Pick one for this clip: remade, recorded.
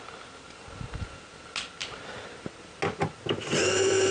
recorded